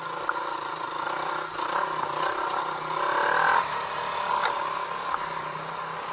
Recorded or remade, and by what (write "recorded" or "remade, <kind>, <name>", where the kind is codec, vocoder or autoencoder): recorded